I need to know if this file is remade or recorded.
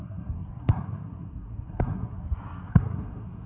remade